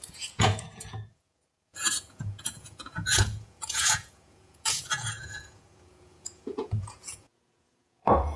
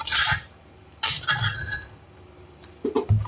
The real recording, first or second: second